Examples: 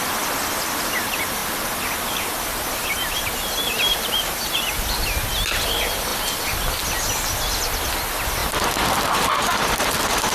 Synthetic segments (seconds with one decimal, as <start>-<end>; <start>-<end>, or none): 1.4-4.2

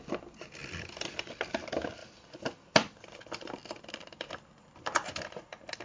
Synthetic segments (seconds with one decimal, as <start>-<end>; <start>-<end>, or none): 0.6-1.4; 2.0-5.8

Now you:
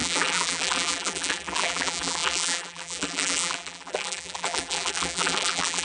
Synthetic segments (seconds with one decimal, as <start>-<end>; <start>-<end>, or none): 0.0-5.8